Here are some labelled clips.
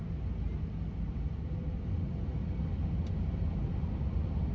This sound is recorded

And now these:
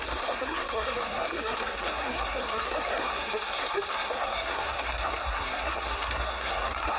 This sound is remade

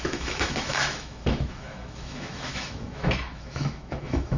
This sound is remade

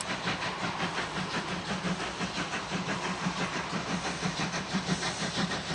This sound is recorded